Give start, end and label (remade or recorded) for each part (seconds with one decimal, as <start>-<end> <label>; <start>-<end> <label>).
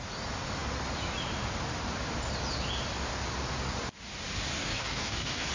0.0-4.5 recorded; 4.5-5.5 remade